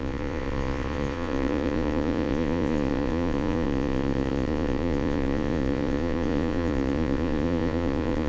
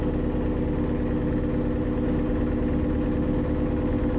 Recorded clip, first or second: second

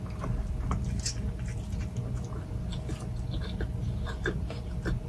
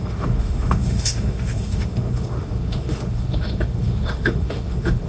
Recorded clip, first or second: first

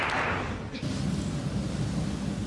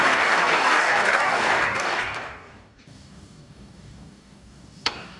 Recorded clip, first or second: first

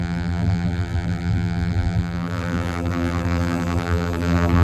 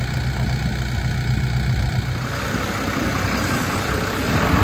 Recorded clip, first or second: second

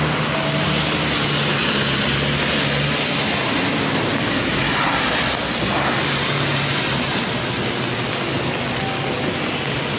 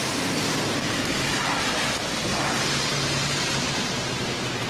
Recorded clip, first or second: first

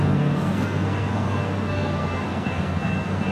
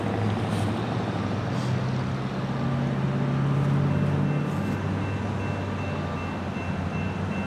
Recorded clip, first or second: second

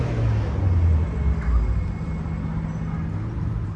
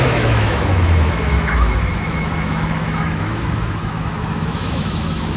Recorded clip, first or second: first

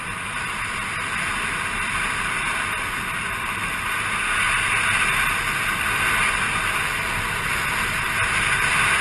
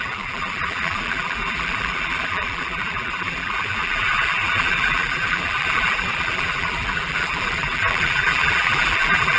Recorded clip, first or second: first